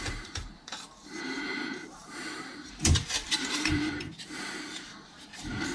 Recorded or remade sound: remade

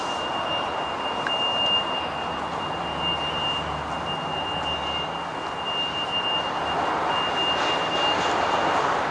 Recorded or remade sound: recorded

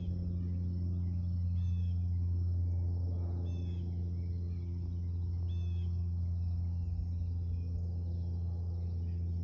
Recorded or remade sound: recorded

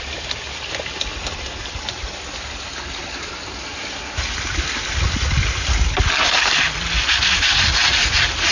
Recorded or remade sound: recorded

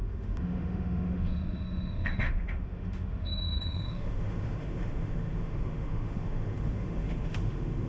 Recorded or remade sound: remade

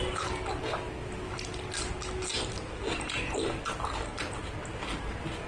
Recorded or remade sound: recorded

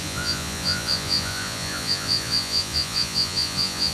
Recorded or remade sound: remade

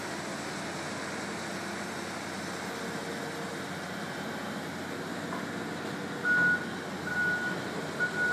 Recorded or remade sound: recorded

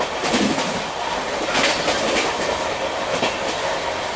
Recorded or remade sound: recorded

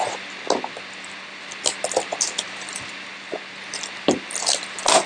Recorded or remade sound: recorded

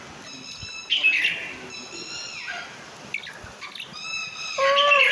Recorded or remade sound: recorded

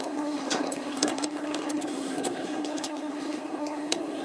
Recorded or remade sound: remade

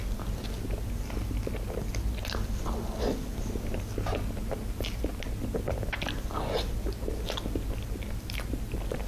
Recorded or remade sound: recorded